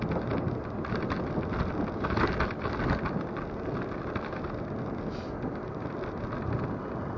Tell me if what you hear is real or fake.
real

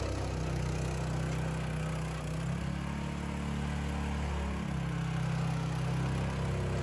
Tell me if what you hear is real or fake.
real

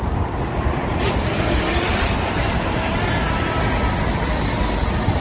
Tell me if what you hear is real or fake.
real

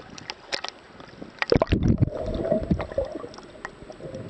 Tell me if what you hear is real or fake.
real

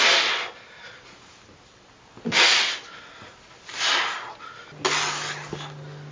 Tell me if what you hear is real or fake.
real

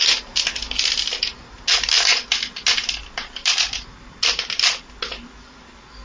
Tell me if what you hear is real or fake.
real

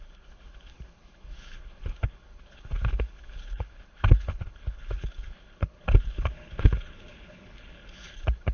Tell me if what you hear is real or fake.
fake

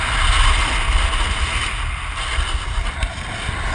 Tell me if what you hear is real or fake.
real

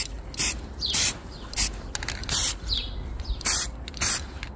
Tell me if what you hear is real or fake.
real